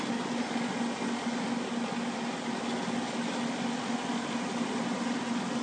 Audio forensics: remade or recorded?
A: recorded